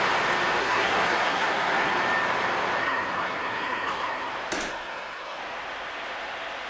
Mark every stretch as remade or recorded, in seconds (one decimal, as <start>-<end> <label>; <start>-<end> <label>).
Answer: 0.0-0.6 recorded; 0.6-1.9 remade; 1.9-2.8 recorded; 2.8-4.3 remade; 4.3-4.7 recorded; 4.7-5.4 remade; 5.4-6.7 recorded